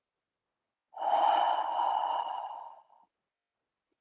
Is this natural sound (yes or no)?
yes